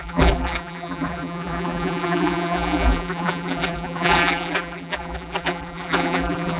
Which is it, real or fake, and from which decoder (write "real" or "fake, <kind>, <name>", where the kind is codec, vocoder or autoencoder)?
fake, vocoder, BigVGAN v2